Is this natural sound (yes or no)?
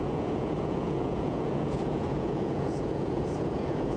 no